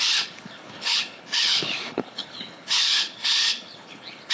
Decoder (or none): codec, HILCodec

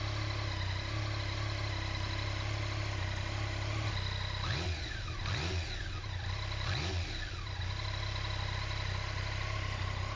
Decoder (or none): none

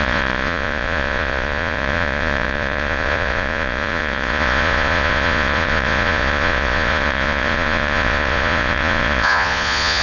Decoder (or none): vocoder, Vocos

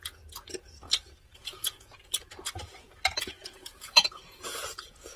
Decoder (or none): vocoder, Vocos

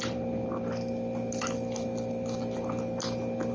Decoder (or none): none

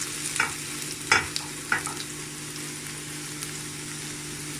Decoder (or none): none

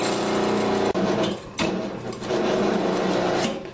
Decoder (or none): none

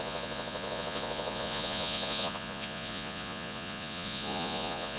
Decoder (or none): vocoder, Vocos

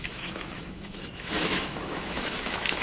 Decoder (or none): autoencoder, DAC-VAE